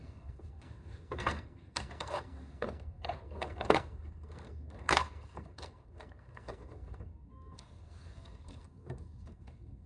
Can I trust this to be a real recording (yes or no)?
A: no